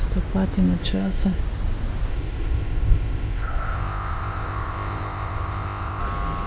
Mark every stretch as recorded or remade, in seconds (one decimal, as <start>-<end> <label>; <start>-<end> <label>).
0.0-0.8 recorded; 0.8-1.4 remade; 1.4-2.1 recorded; 2.1-6.0 remade; 6.0-6.5 recorded